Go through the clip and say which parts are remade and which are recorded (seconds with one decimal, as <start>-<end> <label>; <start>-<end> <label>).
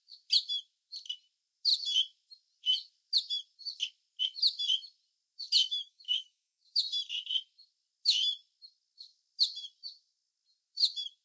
0.0-5.6 recorded; 5.6-6.8 remade; 6.8-11.2 recorded